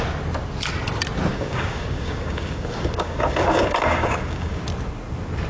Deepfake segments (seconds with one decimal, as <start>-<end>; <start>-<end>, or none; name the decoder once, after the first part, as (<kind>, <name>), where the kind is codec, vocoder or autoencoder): 1.3-4.6 (codec, DAC)